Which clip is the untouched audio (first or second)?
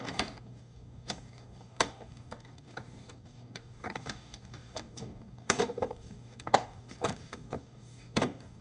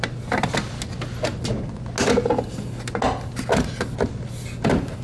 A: second